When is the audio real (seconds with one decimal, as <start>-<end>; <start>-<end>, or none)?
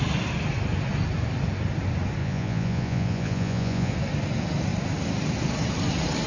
0.0-2.2; 3.9-6.3